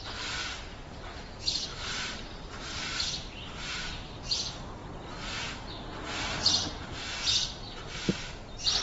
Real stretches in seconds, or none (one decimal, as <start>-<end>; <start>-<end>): 0.0-0.4; 4.2-8.8